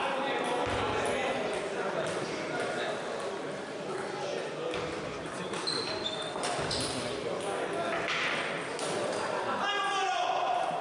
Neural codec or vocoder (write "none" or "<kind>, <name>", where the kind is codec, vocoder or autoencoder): none